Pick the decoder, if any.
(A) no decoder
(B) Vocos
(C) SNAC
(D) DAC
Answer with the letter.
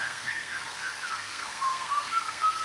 C